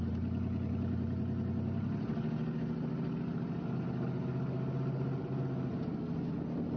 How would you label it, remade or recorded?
recorded